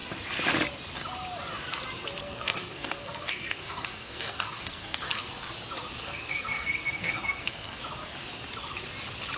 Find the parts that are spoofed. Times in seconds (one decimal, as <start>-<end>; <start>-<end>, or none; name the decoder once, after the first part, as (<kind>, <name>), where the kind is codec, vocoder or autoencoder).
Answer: 2.2-5.5 (codec, SNAC); 6.0-7.8